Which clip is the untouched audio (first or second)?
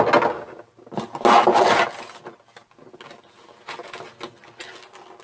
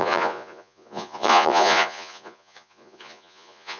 first